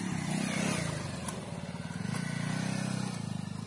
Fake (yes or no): no